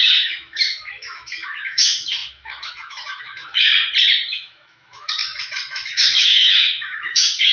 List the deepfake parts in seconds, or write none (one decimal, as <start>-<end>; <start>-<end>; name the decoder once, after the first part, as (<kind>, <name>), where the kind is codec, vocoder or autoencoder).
0.0-3.7 (autoencoder, DAC-VAE); 4.3-7.5